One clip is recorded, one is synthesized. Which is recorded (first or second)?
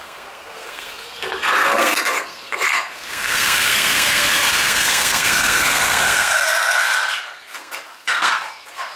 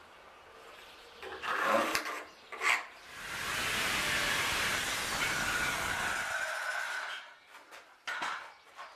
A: second